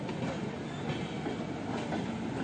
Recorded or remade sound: recorded